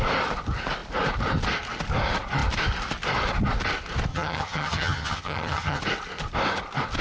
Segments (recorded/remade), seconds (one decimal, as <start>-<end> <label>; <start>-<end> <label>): 0.0-4.1 recorded; 4.1-5.8 remade; 5.8-7.0 recorded